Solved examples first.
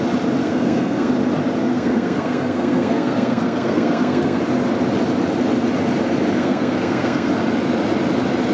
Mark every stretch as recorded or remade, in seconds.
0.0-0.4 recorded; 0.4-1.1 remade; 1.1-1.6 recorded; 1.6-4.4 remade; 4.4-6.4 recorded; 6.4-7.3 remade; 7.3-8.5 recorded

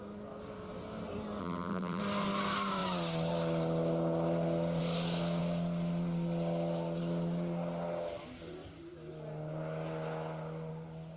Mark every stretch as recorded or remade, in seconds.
0.0-1.4 recorded; 1.4-2.0 remade; 2.0-11.2 recorded